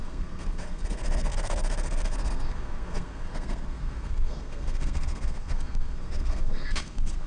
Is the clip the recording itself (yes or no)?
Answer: no